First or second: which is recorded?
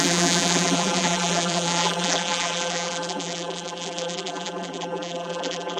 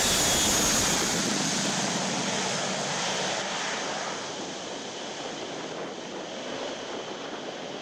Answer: second